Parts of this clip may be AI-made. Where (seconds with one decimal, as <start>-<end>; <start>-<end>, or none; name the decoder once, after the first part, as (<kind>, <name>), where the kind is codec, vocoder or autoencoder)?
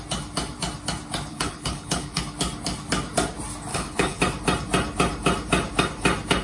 1.3-2.2 (codec, HILCodec); 3.7-4.2